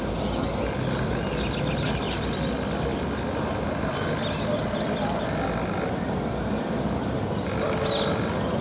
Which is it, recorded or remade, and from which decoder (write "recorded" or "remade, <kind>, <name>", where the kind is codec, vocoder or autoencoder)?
recorded